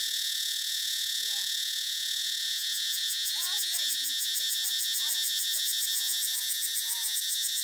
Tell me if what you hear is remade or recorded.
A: remade